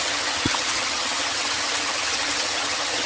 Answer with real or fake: fake